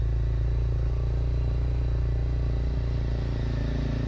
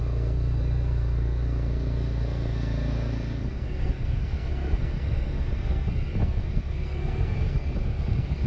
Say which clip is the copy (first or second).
second